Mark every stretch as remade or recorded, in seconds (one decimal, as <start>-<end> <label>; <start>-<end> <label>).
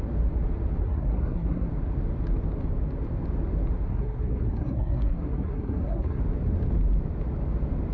0.0-0.8 recorded; 0.8-1.7 remade; 1.7-3.9 recorded; 3.9-6.2 remade; 6.2-7.9 recorded